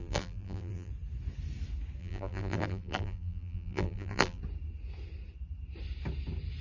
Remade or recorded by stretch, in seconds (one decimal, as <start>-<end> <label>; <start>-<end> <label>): 0.0-0.9 remade; 0.9-2.0 recorded; 2.0-4.4 remade; 4.4-6.6 recorded